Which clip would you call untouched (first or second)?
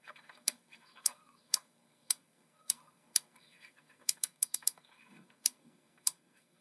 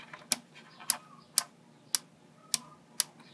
second